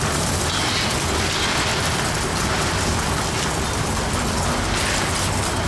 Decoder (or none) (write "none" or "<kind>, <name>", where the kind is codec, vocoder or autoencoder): none